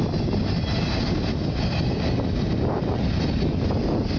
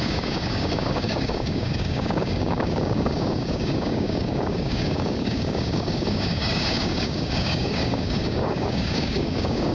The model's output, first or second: second